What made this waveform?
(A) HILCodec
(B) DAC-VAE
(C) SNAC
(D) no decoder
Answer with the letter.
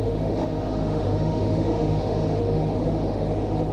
B